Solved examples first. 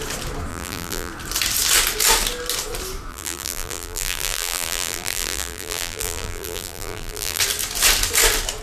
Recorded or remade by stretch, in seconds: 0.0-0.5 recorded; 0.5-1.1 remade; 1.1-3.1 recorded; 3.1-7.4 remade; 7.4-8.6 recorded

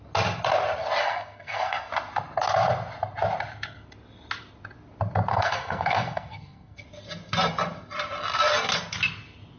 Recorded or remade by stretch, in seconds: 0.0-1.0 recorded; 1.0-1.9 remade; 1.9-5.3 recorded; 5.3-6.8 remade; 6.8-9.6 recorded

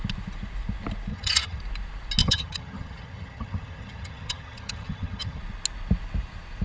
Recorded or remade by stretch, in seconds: 0.0-1.1 recorded; 1.1-1.6 remade; 1.6-2.2 recorded; 2.2-5.4 remade; 5.4-6.6 recorded

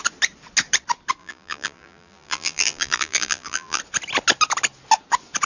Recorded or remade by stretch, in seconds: 0.0-1.2 recorded; 1.2-3.8 remade; 3.8-5.5 recorded

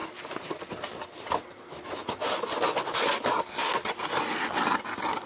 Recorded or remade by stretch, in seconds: 0.0-5.3 recorded

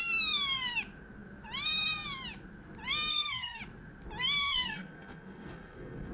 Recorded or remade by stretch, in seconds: 0.0-3.1 recorded; 3.1-3.6 remade; 3.6-4.4 recorded; 4.4-6.1 remade